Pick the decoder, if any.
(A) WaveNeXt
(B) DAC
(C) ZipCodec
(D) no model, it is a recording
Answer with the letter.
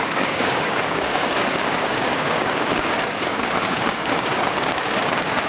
B